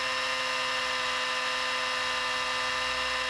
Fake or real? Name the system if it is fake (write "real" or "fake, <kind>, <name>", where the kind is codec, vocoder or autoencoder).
real